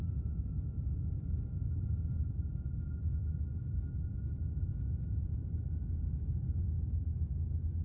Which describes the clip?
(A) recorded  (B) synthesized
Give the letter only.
A